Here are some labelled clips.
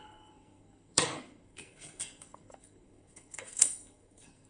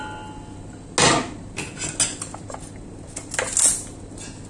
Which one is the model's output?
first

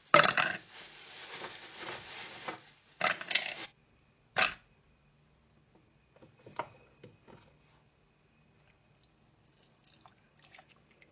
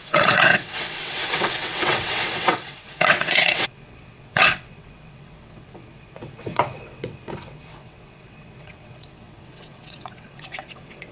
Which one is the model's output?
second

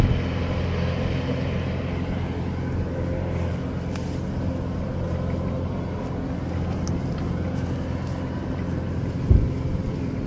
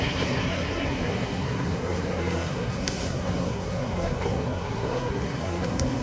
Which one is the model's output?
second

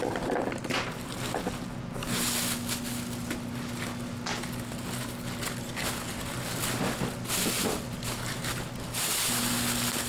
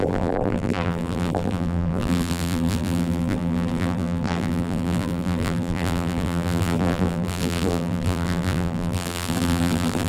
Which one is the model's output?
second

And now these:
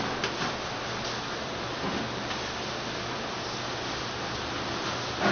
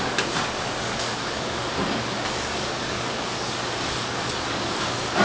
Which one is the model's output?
second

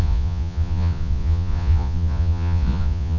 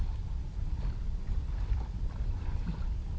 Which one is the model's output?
first